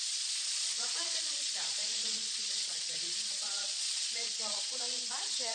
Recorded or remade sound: remade